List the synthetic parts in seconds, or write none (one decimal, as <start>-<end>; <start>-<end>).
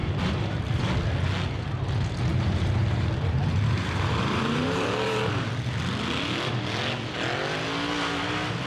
0.0-0.9; 2.3-5.2